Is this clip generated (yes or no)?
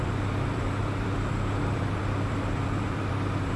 yes